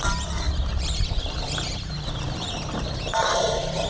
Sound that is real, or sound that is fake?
fake